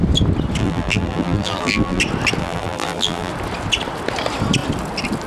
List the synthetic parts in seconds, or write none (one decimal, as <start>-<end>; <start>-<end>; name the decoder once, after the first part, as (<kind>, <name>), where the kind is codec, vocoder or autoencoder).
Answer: 0.6-2.0 (vocoder, BigVGAN v2); 2.4-3.3